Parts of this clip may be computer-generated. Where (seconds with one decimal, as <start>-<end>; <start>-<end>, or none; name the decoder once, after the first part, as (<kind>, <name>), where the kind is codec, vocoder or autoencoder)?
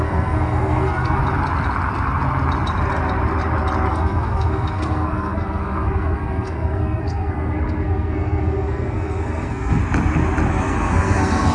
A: 0.0-1.2 (codec, SNAC); 3.9-9.8; 10.5-11.5